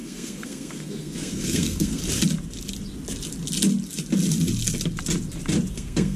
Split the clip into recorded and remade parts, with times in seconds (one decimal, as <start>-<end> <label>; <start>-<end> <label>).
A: 0.0-2.0 remade; 2.0-5.7 recorded; 5.7-6.2 remade